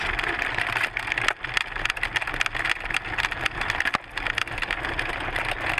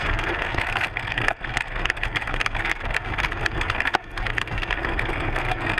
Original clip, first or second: first